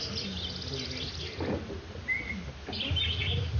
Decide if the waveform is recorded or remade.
recorded